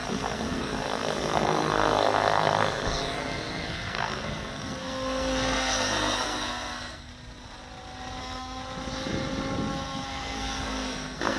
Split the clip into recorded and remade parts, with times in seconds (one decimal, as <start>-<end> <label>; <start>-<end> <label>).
0.0-7.1 remade; 7.1-8.2 recorded; 8.2-8.6 remade; 8.6-9.7 recorded; 9.7-11.4 remade